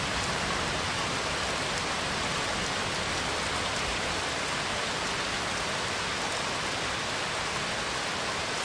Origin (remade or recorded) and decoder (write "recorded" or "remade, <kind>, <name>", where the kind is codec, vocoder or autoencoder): recorded